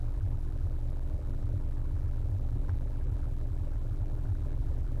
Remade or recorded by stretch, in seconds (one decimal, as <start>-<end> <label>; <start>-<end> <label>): 0.0-5.0 remade

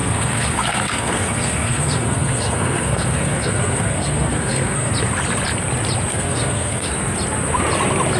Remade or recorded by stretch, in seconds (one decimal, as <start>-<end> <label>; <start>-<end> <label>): 0.0-4.9 remade; 4.9-6.1 recorded; 6.1-6.9 remade; 6.9-8.2 recorded

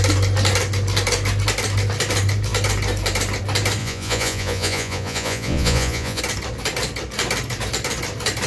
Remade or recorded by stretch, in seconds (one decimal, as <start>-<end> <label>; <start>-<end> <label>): 0.0-3.8 recorded; 3.8-6.2 remade; 6.2-8.5 recorded

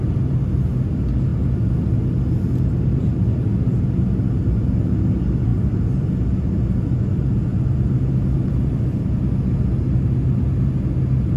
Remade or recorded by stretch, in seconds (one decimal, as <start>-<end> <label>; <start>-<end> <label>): 0.0-11.4 recorded

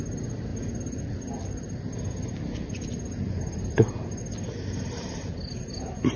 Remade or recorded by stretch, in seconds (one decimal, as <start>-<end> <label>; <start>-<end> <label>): 0.0-6.2 recorded

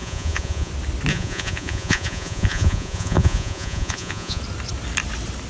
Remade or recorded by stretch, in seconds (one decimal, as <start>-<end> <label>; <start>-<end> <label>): 0.0-0.7 remade; 0.7-1.1 recorded; 1.1-4.4 remade; 4.4-5.5 recorded